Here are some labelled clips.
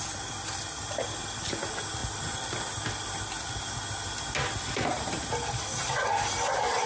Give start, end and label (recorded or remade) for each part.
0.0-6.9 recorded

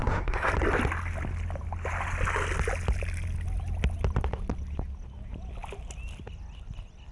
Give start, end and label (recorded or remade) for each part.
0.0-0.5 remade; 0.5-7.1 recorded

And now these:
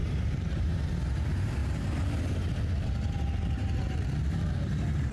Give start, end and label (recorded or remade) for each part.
0.0-0.9 remade; 0.9-3.6 recorded; 3.6-5.1 remade

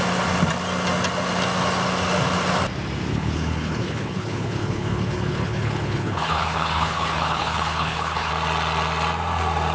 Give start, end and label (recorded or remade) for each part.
0.0-3.1 recorded; 3.1-8.3 remade; 8.3-9.7 recorded

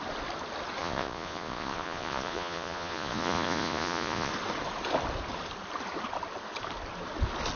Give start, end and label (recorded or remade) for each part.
0.0-0.8 recorded; 0.8-4.3 remade; 4.3-7.6 recorded

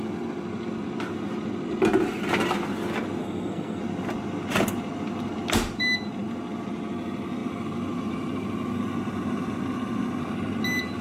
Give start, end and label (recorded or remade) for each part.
0.0-3.2 recorded; 3.2-3.8 remade; 3.8-11.0 recorded

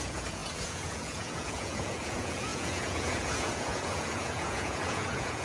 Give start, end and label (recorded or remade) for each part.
0.0-5.4 remade

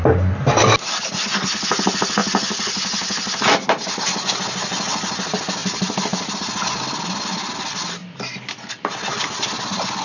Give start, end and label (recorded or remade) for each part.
0.0-5.6 recorded; 5.6-6.3 remade; 6.3-9.1 recorded; 9.1-10.0 remade